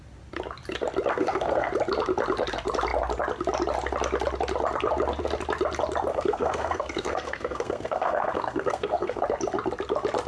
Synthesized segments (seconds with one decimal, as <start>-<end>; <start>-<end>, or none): 1.1-1.7; 6.1-9.2